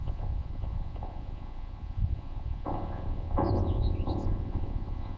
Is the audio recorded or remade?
remade